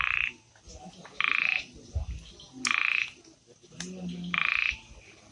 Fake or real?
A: real